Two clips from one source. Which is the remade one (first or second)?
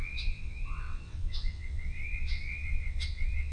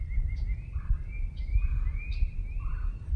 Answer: first